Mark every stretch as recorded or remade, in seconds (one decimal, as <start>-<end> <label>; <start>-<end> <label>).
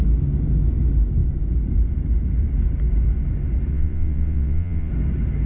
0.0-3.7 recorded; 3.7-4.9 remade; 4.9-5.5 recorded